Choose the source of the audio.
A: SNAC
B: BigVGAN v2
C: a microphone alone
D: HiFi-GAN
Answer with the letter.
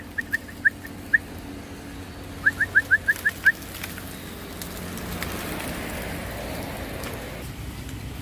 C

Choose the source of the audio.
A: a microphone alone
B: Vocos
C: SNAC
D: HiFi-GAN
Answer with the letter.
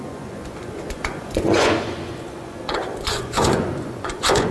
B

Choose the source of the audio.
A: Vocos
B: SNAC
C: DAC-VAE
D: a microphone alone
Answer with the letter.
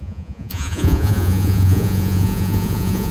A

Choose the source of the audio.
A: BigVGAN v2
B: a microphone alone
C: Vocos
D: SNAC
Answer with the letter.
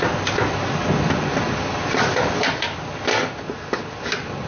B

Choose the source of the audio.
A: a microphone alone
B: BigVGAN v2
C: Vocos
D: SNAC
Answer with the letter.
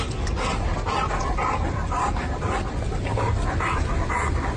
A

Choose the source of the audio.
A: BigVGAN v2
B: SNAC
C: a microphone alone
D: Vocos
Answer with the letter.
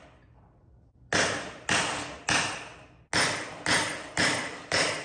C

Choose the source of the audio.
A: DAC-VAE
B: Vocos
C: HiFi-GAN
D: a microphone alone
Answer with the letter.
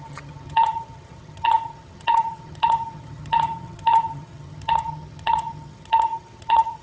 C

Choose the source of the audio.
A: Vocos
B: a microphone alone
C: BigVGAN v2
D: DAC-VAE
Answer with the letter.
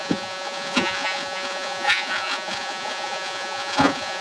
A